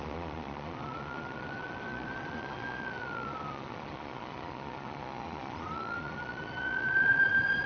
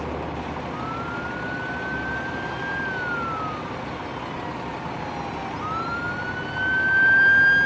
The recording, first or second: second